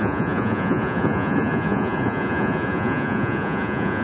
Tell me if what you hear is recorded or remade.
remade